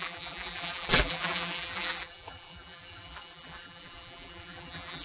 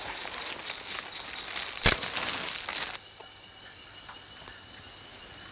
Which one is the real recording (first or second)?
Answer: second